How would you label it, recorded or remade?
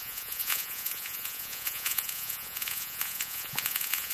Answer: remade